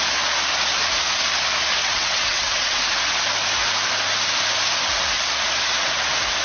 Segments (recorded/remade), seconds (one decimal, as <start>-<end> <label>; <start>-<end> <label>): 0.0-1.8 recorded; 1.8-2.8 remade; 2.8-6.4 recorded